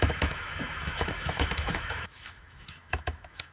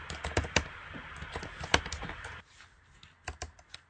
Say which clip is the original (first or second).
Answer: second